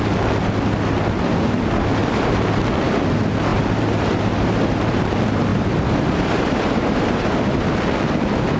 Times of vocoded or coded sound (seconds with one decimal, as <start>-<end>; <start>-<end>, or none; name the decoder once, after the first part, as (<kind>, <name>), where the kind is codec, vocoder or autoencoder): 2.0-2.6 (vocoder, BigVGAN v2); 3.5-5.1; 5.5-7.5